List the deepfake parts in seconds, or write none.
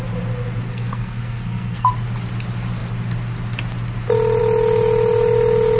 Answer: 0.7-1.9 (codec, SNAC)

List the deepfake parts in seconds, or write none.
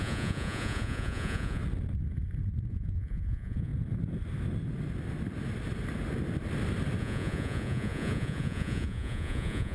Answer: 0.0-1.6 (vocoder, Vocos); 2.7-3.7; 7.0-9.7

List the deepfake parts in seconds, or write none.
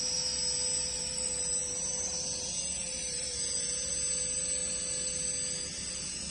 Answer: none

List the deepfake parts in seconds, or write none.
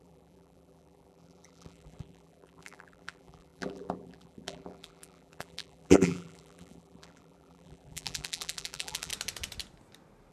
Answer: 0.0-9.1 (vocoder, BigVGAN v2)